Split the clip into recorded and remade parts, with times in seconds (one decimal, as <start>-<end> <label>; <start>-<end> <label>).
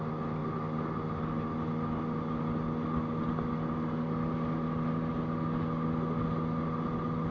0.0-7.3 recorded